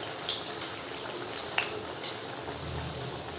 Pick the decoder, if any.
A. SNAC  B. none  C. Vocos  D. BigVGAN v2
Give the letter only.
B